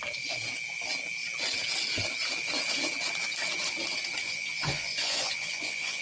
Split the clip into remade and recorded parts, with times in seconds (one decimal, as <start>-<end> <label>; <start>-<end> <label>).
0.0-4.2 recorded; 4.2-6.0 remade